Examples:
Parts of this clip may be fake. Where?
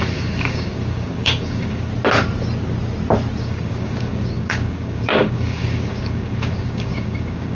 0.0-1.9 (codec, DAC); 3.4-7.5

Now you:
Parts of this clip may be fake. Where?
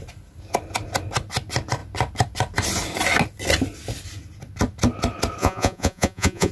5.4-6.5 (vocoder, Vocos)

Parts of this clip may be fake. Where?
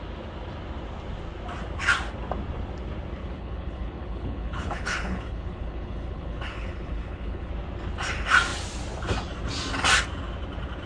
3.2-7.5 (codec, HILCodec)